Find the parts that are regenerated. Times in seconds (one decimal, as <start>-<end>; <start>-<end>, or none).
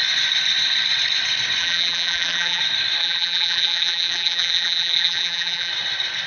1.6-2.6; 3.0-5.7